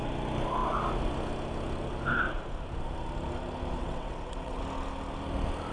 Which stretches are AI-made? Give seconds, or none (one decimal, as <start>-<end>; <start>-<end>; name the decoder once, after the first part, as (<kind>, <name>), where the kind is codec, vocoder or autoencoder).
3.8-4.6 (vocoder, WaveNeXt)